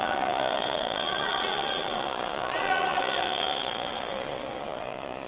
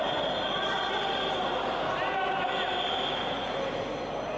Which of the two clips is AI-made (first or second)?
first